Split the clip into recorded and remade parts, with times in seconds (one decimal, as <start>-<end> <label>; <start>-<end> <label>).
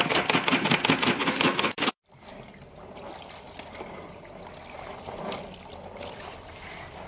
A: 0.0-1.2 recorded; 1.2-2.0 remade; 2.0-7.1 recorded